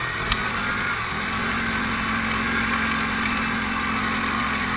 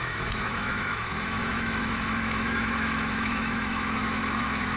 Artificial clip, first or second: second